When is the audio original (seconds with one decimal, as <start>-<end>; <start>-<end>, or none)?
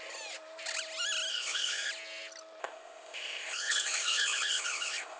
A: 0.0-1.3; 1.9-2.6